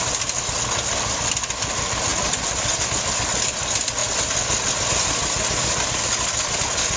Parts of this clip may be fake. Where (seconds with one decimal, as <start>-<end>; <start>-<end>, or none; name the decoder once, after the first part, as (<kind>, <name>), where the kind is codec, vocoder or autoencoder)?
none